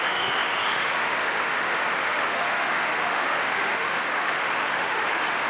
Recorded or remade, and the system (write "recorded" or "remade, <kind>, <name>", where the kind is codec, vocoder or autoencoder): remade, autoencoder, DAC-VAE